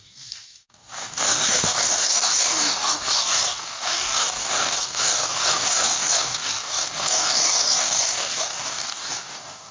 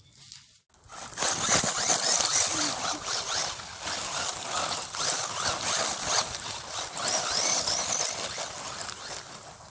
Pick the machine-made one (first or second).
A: first